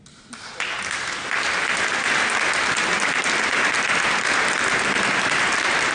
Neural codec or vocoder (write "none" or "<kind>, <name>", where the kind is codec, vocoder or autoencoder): none